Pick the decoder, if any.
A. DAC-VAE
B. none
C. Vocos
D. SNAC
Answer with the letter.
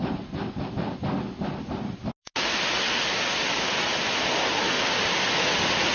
B